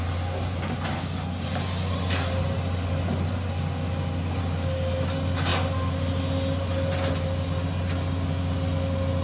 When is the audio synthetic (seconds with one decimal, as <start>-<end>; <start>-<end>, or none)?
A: none